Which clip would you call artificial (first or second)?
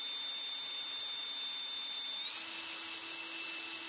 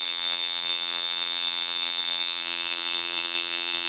second